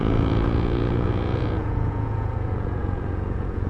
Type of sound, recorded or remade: remade